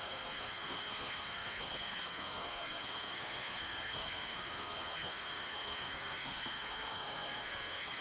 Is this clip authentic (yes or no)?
no